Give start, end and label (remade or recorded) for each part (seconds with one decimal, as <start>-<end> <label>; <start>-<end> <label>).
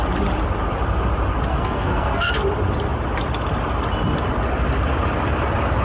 0.0-1.5 recorded; 1.5-2.3 remade; 2.3-5.8 recorded